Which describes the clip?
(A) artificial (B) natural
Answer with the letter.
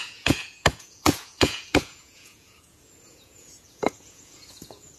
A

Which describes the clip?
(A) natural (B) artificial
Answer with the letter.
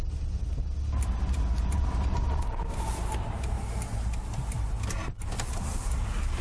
A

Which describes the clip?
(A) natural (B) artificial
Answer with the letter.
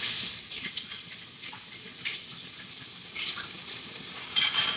A